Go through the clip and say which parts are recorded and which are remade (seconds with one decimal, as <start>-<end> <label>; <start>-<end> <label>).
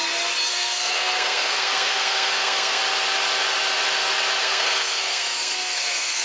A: 0.0-0.5 recorded; 0.5-2.8 remade; 2.8-4.4 recorded; 4.4-6.2 remade